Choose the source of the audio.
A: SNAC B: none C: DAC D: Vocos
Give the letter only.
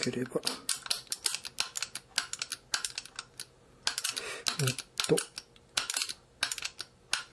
B